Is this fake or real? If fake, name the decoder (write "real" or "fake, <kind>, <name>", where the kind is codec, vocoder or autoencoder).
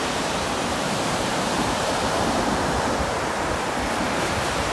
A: fake, vocoder, BigVGAN v2